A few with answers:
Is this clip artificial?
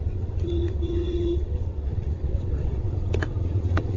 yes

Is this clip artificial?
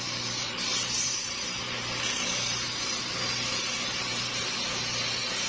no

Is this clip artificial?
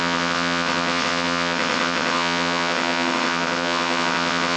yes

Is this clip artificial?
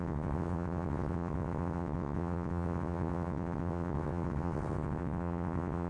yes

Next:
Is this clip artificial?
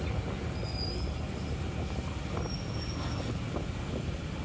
no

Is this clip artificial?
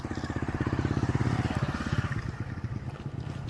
no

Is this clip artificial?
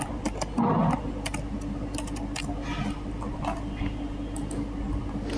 no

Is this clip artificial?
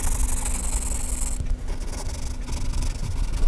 no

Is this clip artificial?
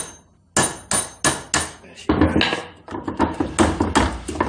no